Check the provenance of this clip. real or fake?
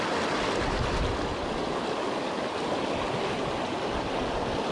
real